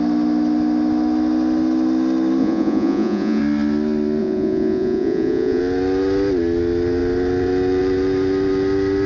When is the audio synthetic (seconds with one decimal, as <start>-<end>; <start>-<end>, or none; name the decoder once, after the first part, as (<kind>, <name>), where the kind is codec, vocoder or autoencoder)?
2.4-3.4 (vocoder, Vocos); 4.2-5.6